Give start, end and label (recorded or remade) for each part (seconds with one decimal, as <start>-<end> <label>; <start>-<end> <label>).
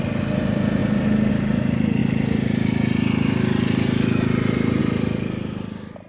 0.0-6.1 recorded